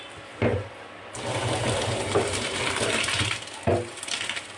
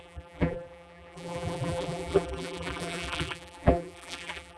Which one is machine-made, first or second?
second